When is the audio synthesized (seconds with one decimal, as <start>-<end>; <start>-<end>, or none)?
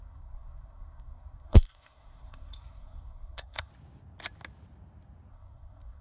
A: 0.0-3.7; 5.3-6.0